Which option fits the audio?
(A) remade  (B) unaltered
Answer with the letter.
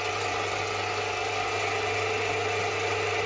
B